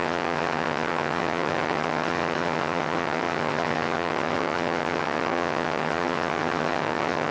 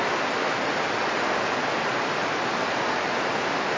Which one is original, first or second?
second